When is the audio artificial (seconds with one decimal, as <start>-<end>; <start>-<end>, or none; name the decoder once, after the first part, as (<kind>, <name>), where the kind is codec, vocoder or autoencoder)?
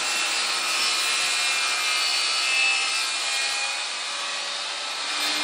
none